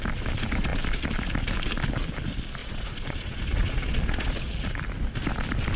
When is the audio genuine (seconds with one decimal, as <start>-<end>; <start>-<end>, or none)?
0.0-2.6; 4.7-5.8